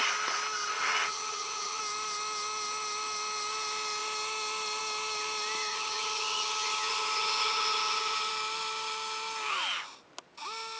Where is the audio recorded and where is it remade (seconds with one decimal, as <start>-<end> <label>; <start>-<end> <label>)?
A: 0.0-0.7 recorded; 0.7-1.8 remade; 1.8-5.7 recorded; 5.7-8.3 remade; 8.3-10.8 recorded